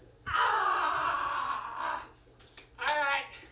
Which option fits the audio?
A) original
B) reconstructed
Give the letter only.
A